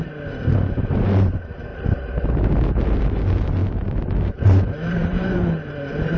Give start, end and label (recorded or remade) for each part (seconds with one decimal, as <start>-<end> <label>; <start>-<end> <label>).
0.0-1.7 remade; 1.7-2.5 recorded; 2.5-6.2 remade